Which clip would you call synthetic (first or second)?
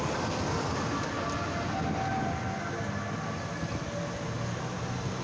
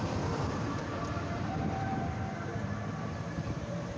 second